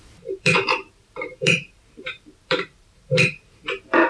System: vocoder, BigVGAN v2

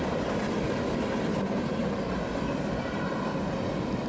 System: none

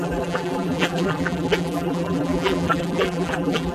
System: vocoder, BigVGAN v2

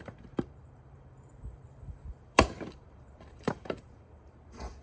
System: vocoder, BigVGAN v2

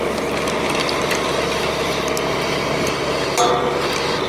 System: none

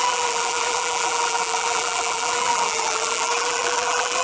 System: vocoder, BigVGAN v2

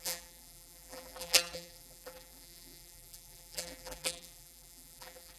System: vocoder, BigVGAN v2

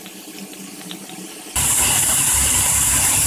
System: vocoder, BigVGAN v2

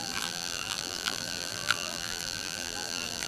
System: vocoder, BigVGAN v2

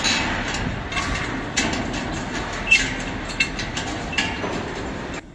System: none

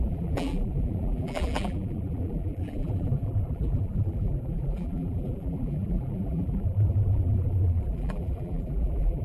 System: vocoder, BigVGAN v2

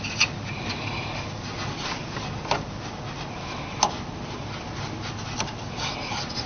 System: none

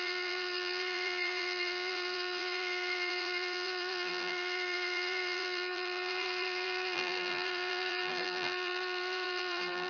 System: vocoder, BigVGAN v2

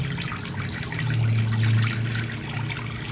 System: none